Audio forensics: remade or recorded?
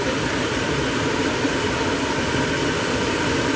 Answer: remade